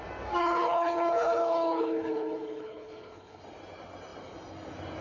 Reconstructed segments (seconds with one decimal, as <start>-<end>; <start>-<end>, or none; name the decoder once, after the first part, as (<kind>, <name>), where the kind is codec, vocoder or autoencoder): 0.4-3.4 (codec, HILCodec)